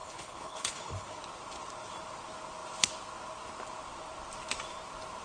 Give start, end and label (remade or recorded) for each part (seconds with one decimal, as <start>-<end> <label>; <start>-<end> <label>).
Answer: 0.0-1.2 remade; 1.2-5.2 recorded